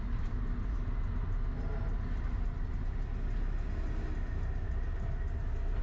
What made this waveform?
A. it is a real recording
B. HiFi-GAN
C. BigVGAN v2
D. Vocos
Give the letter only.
A